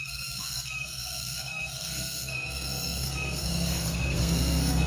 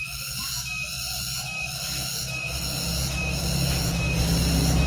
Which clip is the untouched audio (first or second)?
second